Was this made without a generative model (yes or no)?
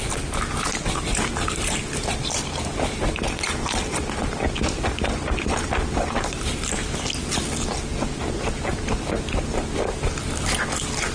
yes